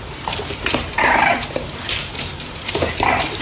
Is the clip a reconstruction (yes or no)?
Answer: yes